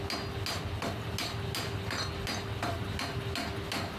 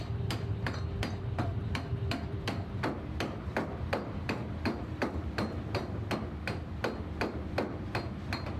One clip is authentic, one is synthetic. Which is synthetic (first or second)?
second